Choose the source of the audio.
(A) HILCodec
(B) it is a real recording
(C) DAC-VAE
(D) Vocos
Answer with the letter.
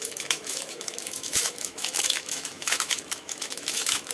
C